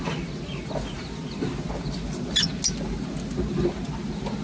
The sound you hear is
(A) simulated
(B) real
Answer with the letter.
B